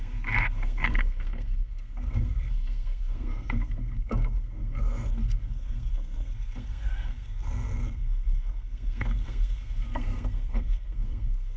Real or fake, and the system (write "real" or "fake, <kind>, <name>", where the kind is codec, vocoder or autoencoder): fake, codec, SNAC